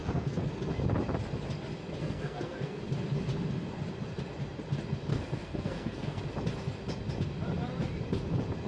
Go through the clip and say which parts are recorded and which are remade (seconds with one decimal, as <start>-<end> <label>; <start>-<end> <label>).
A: 0.0-0.5 remade; 0.5-2.0 recorded; 2.0-2.8 remade; 2.8-5.1 recorded; 5.1-6.2 remade; 6.2-8.7 recorded